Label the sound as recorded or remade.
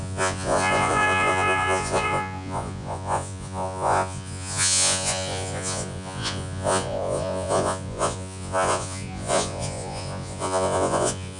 remade